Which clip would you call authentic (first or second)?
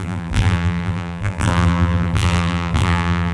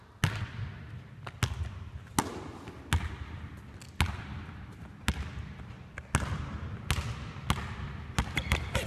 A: second